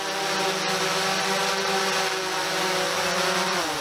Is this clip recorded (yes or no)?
yes